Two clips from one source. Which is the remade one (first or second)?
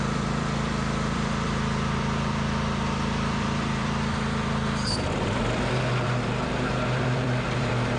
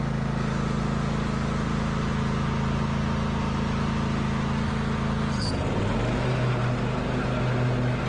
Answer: first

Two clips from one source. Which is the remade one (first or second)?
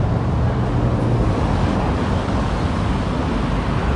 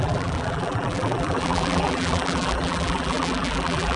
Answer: second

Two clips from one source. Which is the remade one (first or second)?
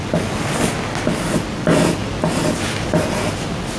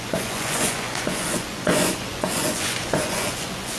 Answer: second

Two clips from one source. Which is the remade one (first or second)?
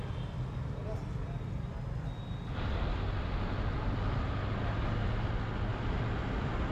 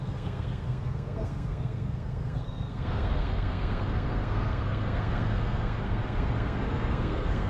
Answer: second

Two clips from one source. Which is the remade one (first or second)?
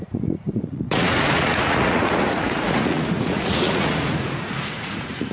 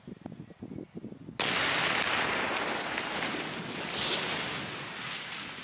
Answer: first